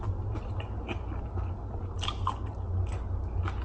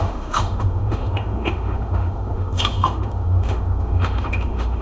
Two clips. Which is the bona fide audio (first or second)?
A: first